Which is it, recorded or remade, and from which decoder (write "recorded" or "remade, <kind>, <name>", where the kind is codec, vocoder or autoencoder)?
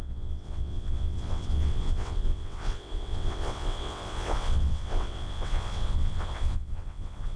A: remade, vocoder, WaveNeXt